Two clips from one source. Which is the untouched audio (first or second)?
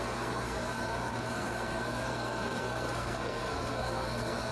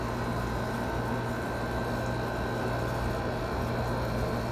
second